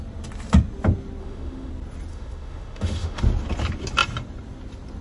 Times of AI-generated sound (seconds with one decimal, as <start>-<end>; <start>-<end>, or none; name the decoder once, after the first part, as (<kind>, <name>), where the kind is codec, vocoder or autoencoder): 1.2-1.7 (autoencoder, DAC-VAE); 2.1-3.2